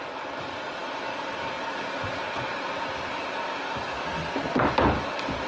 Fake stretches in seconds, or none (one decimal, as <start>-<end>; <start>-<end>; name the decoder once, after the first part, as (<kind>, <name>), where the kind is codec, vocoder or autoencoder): none